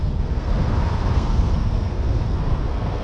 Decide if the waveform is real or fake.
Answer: fake